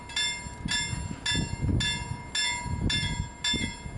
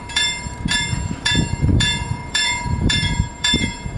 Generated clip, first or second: second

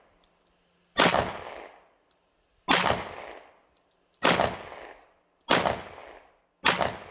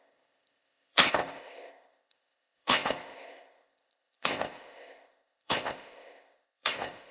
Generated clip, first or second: second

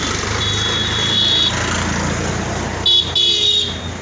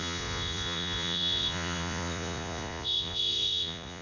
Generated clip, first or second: second